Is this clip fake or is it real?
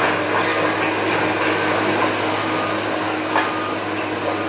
real